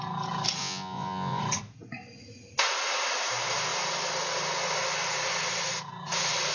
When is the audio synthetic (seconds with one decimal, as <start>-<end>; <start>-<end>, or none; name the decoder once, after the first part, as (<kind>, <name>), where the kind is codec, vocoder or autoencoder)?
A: 0.6-1.4 (vocoder, Vocos)